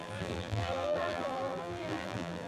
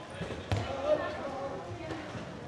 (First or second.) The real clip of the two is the second